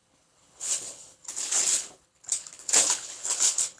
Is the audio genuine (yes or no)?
no